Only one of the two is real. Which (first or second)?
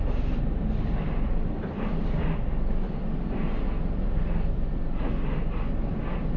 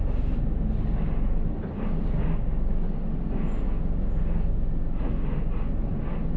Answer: second